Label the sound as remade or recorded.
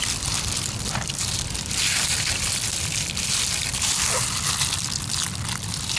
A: recorded